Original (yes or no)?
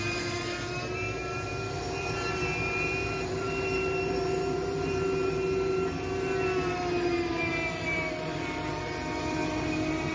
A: no